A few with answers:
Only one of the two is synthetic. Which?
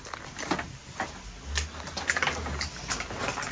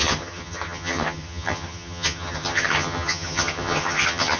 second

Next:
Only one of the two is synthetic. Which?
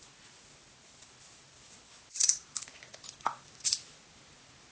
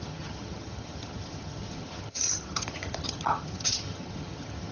second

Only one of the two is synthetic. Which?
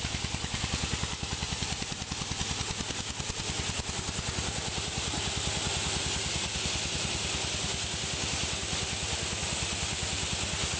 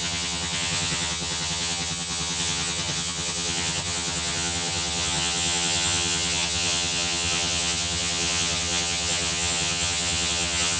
second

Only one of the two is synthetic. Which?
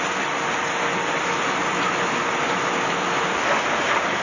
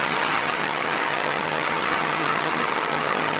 second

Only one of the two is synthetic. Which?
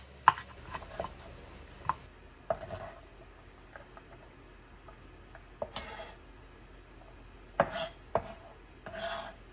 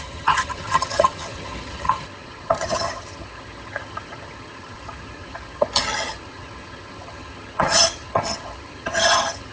second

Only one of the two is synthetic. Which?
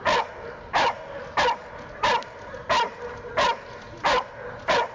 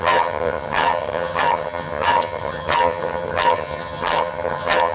second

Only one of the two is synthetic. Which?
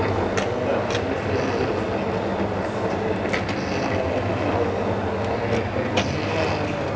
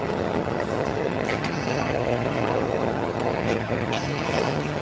second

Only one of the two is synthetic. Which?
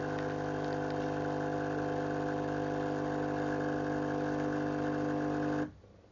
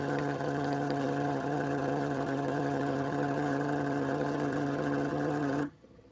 second